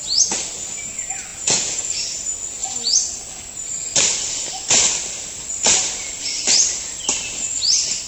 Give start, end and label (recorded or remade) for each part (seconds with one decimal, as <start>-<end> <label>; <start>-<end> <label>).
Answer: 0.0-1.3 recorded; 1.3-2.0 remade; 2.0-8.1 recorded